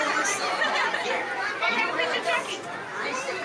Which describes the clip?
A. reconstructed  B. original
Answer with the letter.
A